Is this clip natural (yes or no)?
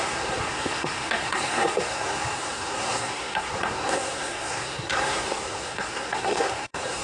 no